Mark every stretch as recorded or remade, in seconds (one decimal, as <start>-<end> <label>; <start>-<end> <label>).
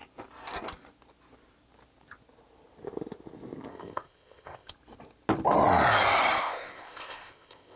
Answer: 0.0-3.7 recorded; 3.7-4.7 remade; 4.7-6.4 recorded; 6.4-7.8 remade